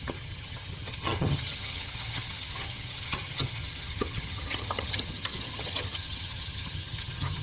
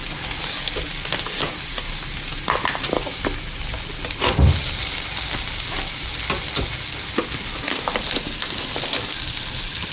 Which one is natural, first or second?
second